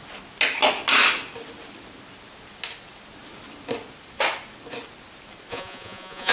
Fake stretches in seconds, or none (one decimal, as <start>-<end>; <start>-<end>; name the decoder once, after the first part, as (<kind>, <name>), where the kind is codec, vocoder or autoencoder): 5.5-6.3 (vocoder, Vocos)